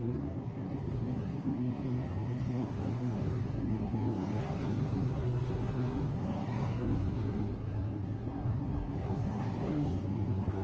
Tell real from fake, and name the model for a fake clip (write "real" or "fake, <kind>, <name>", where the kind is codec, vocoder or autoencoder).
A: fake, codec, SNAC